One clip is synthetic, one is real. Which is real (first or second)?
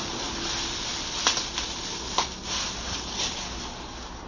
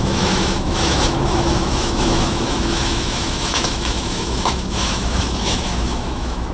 first